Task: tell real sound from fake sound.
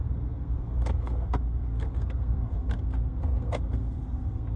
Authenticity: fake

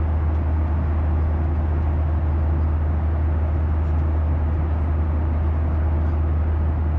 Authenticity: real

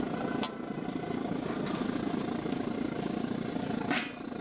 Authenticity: real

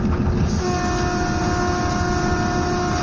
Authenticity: real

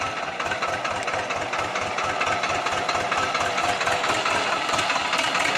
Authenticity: real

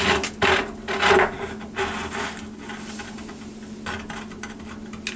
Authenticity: real